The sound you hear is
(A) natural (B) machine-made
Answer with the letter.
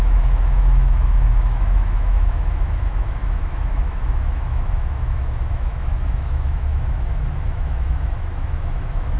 B